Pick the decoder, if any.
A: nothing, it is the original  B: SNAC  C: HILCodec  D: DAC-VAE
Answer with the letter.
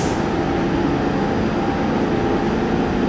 A